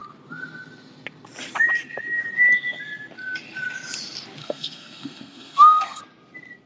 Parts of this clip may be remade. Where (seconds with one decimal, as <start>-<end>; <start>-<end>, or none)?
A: 4.4-6.0